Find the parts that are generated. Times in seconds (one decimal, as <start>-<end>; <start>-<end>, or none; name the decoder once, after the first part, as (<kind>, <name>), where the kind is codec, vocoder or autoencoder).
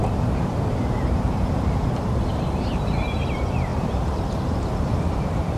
0.0-5.6 (vocoder, BigVGAN v2)